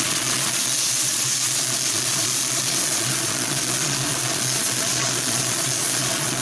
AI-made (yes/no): yes